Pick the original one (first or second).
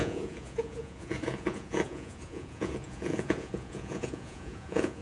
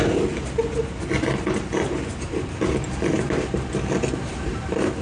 second